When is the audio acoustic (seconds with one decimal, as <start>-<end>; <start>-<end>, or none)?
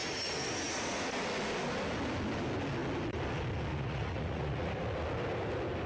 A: 0.0-3.7; 4.7-5.9